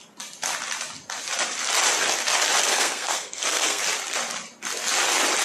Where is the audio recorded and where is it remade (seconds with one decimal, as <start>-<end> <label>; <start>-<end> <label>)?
0.0-2.6 recorded; 2.6-3.8 remade; 3.8-5.4 recorded